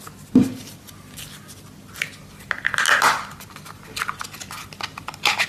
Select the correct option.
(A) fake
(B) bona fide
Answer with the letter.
B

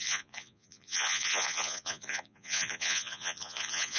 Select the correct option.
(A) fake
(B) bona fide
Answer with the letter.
A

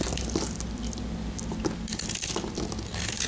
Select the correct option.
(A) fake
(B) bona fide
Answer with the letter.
B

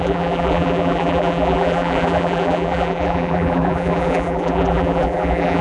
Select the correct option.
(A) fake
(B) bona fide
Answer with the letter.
A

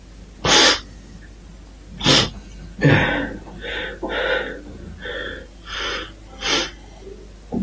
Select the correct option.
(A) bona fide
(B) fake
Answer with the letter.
A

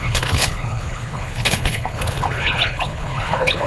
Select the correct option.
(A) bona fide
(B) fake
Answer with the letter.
B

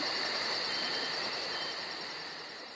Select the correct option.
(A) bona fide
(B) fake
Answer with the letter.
B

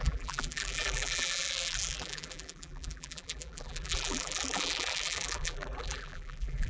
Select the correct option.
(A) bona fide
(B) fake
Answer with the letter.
B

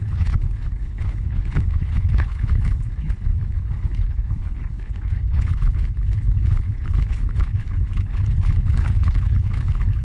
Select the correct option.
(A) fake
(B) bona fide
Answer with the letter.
A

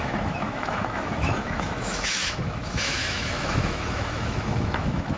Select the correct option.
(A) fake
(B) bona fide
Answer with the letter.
A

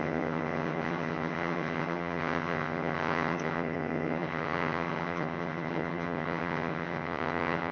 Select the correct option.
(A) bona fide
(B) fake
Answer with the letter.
B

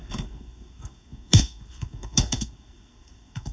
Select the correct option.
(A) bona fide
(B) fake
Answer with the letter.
B